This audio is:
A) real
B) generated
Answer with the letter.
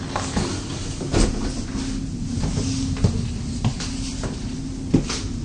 A